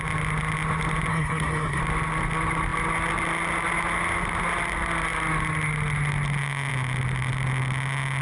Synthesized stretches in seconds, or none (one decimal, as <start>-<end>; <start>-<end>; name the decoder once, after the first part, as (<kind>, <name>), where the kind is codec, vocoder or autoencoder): 1.1-1.8 (codec, SNAC)